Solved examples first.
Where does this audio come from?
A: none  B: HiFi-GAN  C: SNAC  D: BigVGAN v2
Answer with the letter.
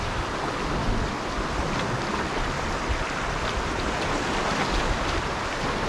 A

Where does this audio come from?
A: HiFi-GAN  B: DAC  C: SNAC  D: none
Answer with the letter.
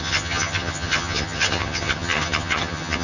A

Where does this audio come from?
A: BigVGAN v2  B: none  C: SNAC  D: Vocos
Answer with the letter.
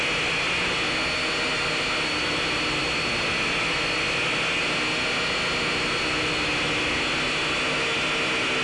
B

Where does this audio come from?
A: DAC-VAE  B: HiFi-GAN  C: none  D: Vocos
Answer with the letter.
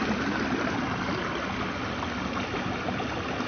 C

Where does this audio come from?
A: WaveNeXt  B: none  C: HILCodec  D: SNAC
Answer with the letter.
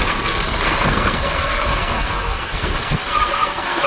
D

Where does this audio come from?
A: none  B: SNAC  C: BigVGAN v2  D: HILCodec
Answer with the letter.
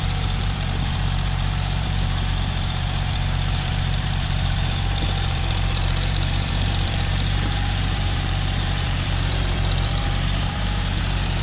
C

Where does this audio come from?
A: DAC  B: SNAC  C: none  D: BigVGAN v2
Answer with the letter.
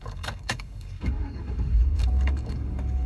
A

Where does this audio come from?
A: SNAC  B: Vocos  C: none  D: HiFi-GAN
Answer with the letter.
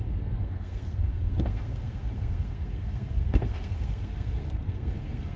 A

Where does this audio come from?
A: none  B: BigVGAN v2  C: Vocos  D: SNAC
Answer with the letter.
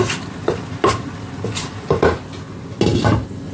A